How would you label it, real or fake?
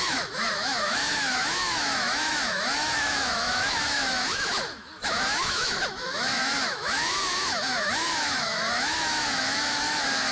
fake